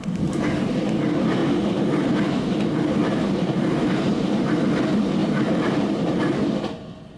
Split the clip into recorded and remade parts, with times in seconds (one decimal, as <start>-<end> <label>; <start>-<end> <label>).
0.0-1.4 recorded; 1.4-2.1 remade; 2.1-3.0 recorded; 3.0-4.1 remade; 4.1-5.2 recorded; 5.2-6.2 remade; 6.2-7.2 recorded